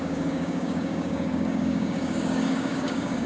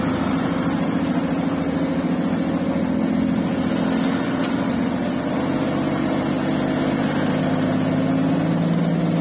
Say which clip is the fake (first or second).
first